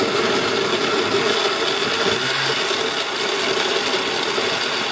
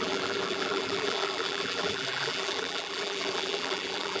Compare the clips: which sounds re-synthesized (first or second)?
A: second